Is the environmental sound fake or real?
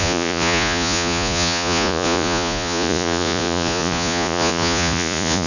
fake